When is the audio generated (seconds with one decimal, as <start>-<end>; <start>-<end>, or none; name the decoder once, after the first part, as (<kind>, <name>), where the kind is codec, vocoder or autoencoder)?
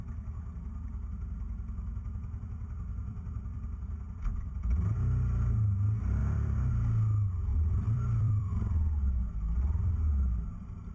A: 3.0-4.6 (vocoder, BigVGAN v2); 6.2-6.7; 7.5-8.5